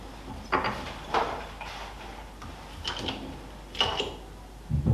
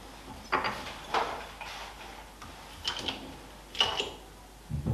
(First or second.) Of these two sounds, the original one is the second